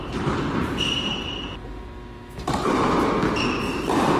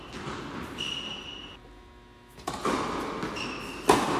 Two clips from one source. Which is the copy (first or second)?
first